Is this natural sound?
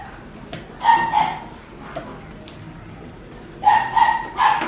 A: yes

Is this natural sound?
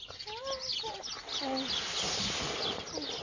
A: yes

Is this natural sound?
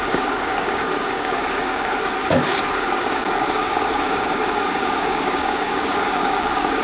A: no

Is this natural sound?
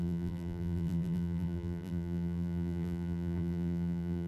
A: no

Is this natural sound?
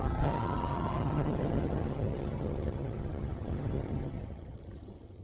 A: no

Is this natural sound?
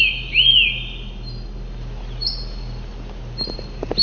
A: yes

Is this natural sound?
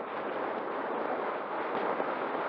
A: yes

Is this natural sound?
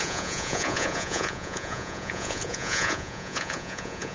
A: no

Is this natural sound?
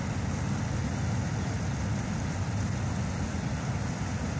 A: yes